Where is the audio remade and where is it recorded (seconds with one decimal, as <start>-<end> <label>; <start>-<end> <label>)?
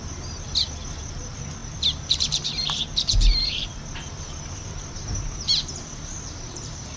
0.0-7.0 remade